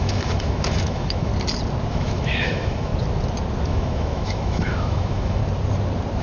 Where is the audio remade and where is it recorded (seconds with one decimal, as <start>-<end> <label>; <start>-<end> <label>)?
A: 0.0-1.3 remade; 1.3-1.9 recorded; 1.9-2.9 remade; 2.9-3.7 recorded; 3.7-5.4 remade; 5.4-6.2 recorded